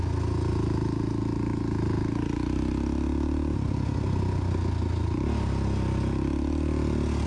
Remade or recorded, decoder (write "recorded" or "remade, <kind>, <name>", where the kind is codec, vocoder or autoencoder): recorded